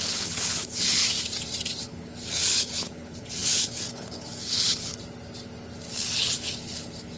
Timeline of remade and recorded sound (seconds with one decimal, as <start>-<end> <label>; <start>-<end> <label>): 0.0-1.0 remade; 1.0-1.8 recorded; 1.8-4.9 remade; 4.9-5.9 recorded; 5.9-7.2 remade